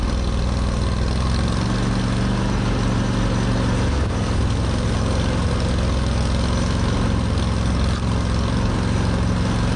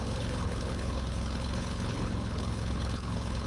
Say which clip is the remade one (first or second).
second